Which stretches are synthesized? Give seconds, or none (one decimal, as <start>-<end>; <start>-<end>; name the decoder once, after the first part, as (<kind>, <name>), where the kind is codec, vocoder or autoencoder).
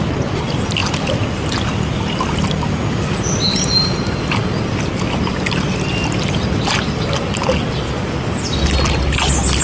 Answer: none